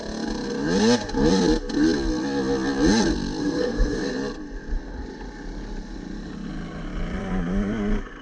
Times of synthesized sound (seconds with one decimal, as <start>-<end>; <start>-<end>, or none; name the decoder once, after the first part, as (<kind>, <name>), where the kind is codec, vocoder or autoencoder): 3.4-4.1 (codec, SNAC)